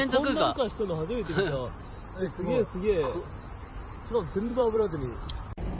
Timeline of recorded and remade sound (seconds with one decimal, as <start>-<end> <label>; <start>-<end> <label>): 0.0-4.5 recorded; 4.5-5.3 remade; 5.3-5.8 recorded